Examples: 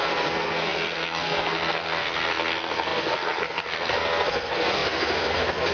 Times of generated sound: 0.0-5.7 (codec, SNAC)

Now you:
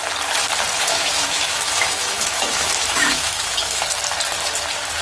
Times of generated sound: 0.8-3.8 (autoencoder, DAC-VAE)

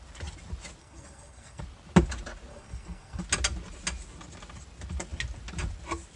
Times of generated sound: 0.8-1.6 (codec, SNAC); 2.5-3.2